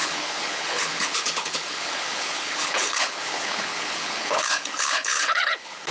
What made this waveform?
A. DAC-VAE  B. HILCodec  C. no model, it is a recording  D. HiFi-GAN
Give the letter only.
B